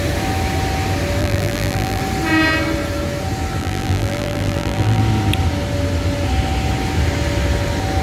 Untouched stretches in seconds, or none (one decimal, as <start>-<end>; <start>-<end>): 0.0-1.2; 2.0-3.6; 5.0-8.0